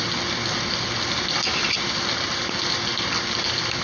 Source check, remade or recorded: recorded